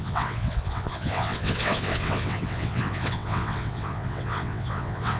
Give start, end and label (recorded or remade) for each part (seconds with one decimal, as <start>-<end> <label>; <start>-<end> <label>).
0.0-5.2 remade